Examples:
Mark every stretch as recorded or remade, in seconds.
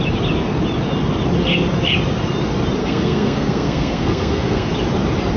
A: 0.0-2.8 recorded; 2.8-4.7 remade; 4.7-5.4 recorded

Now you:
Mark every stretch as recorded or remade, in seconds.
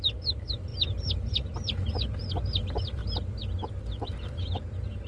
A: 0.0-3.0 remade; 3.0-3.8 recorded; 3.8-5.1 remade